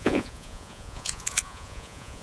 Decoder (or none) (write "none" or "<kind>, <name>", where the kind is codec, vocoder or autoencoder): vocoder, Vocos